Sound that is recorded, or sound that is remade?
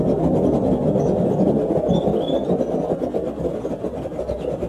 recorded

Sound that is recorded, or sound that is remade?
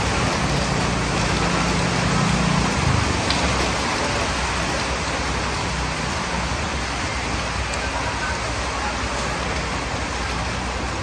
recorded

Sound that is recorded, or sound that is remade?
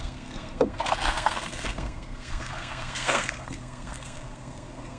remade